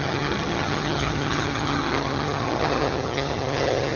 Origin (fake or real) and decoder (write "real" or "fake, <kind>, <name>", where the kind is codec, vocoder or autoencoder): fake, vocoder, HiFi-GAN